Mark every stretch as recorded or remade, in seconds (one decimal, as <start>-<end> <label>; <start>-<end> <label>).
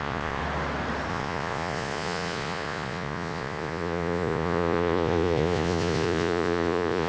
0.0-0.4 remade; 0.4-1.1 recorded; 1.1-7.1 remade